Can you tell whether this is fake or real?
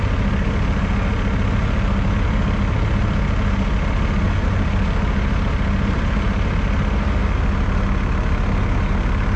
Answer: real